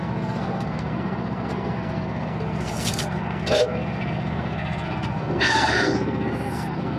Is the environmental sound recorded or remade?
remade